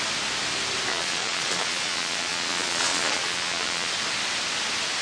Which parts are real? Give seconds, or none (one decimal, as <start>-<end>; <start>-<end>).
0.0-0.9; 3.9-5.0